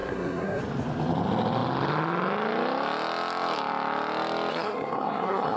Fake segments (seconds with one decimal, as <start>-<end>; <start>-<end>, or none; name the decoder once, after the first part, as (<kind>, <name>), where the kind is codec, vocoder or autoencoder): 0.0-0.6 (codec, SNAC); 4.5-5.6